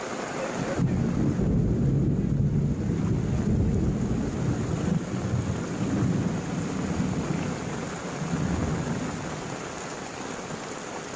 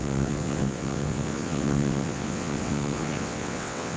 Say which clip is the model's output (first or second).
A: second